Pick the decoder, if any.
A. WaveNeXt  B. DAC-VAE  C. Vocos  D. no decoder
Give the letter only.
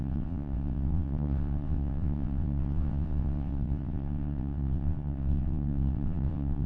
A